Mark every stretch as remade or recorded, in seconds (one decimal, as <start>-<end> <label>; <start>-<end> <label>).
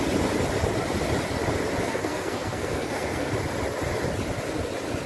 0.0-1.8 recorded; 1.8-3.3 remade; 3.3-5.1 recorded